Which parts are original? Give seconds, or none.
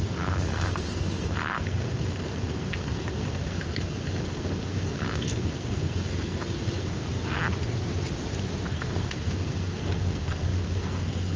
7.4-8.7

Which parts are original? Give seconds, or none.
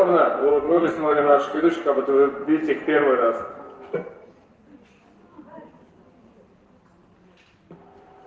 0.0-0.5; 1.6-8.3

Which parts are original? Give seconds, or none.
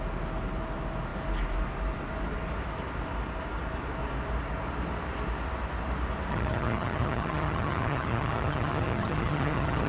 0.0-6.3